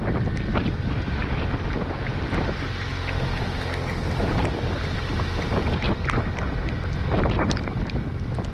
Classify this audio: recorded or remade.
recorded